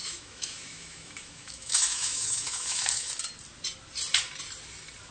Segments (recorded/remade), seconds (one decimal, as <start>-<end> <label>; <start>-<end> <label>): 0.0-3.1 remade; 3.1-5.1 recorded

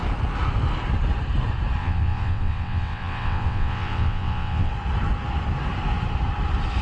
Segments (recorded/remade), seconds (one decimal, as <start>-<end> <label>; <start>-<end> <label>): 0.0-1.8 recorded; 1.8-4.7 remade; 4.7-6.8 recorded

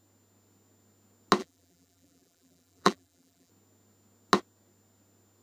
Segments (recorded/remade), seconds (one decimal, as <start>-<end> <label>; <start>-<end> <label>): 0.0-1.4 recorded; 1.4-3.5 remade; 3.5-5.4 recorded

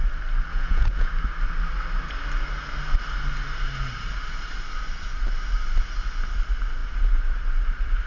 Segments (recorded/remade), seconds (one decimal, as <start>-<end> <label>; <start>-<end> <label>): 0.0-0.5 recorded; 0.5-1.1 remade; 1.1-8.1 recorded

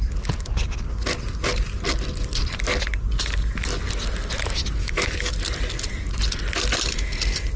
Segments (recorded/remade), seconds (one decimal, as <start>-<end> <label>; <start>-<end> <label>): 0.0-4.8 recorded; 4.8-5.3 remade; 5.3-7.6 recorded

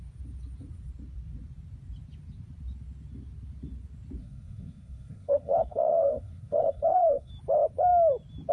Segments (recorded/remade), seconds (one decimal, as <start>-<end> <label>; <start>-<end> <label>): 0.0-4.2 recorded; 4.2-7.3 remade; 7.3-8.5 recorded